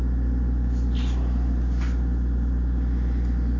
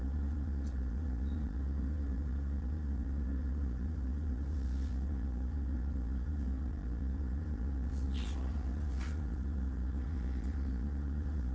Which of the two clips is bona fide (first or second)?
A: first